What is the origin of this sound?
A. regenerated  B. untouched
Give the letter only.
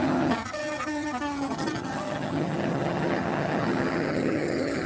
A